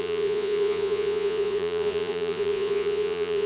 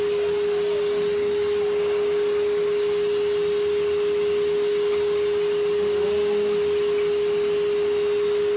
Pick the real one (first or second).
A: second